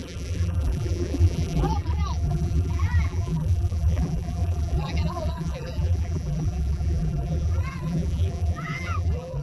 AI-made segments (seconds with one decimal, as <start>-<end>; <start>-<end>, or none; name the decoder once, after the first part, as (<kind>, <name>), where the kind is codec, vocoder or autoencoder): 0.0-9.4 (vocoder, BigVGAN v2)